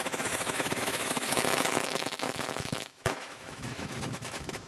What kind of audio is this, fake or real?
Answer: fake